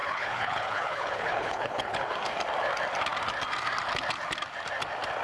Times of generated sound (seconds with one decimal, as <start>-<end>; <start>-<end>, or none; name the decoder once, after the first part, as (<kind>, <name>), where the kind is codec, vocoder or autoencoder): 0.0-2.1 (codec, HILCodec)